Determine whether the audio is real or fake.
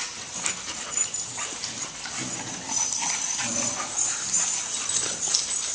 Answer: real